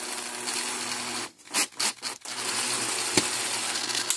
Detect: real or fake real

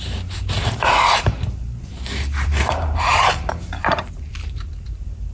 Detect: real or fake fake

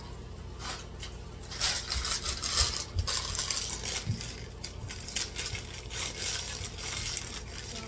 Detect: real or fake real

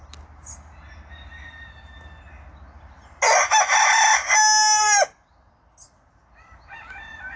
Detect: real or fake real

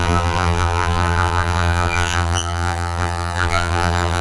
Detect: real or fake fake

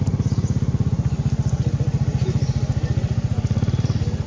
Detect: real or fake real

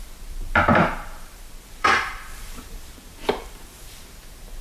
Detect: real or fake fake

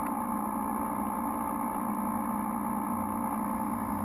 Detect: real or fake real